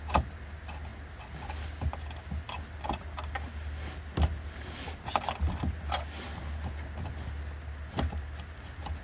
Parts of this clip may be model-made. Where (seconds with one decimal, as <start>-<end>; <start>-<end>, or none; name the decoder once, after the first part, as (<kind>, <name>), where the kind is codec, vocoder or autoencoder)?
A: none